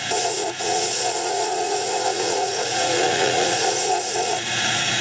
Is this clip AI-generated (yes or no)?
yes